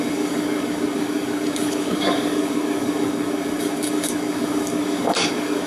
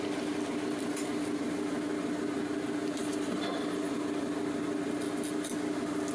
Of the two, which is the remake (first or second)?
first